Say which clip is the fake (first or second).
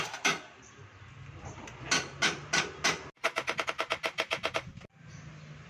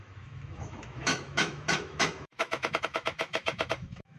second